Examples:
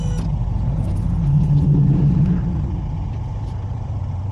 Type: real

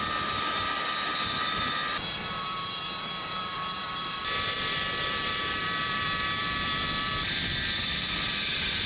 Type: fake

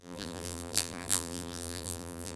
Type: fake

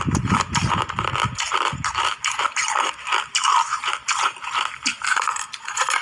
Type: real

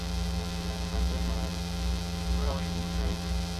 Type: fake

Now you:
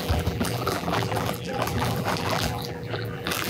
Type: fake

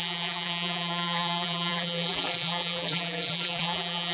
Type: fake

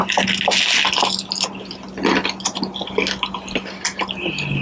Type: real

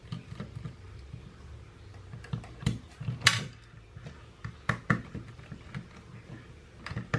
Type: real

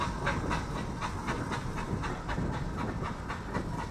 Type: real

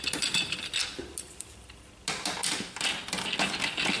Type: real